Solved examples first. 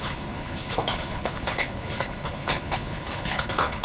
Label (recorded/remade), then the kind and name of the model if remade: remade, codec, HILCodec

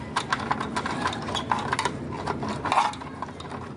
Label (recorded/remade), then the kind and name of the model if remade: recorded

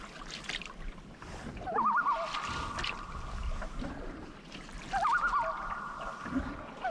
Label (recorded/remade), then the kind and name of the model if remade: recorded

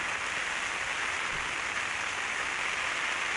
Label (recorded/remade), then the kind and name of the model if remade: recorded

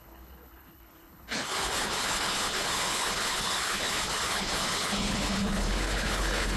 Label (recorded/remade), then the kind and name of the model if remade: remade, codec, HILCodec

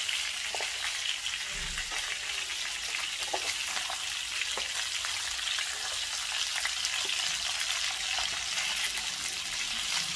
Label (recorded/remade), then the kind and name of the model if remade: recorded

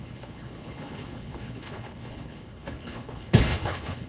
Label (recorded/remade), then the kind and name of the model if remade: remade, codec, HILCodec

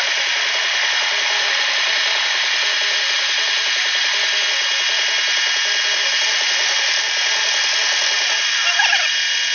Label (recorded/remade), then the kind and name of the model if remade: recorded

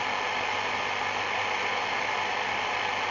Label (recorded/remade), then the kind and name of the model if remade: recorded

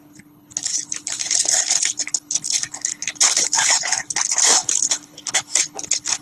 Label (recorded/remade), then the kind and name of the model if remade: remade, codec, HILCodec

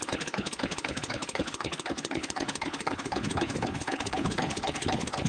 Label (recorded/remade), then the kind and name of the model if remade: remade, codec, HILCodec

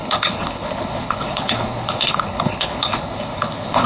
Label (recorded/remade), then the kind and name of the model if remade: remade, codec, HILCodec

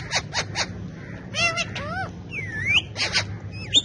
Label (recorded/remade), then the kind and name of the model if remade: recorded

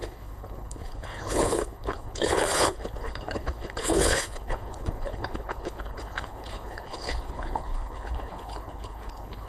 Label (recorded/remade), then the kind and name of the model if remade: remade, codec, HILCodec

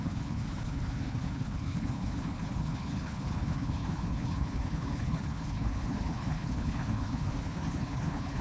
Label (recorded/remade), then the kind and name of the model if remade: remade, codec, HILCodec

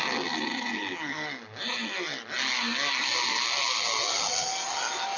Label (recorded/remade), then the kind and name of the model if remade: recorded